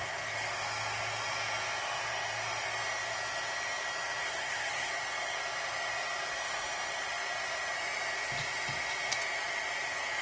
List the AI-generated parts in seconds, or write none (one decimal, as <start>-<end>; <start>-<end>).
4.2-4.9